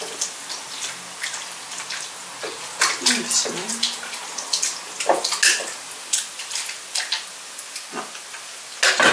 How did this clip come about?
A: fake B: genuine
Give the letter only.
B